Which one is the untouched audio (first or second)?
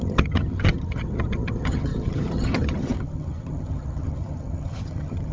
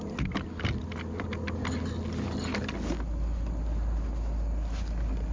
second